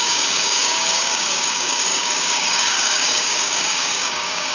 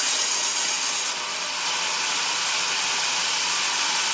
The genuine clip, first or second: second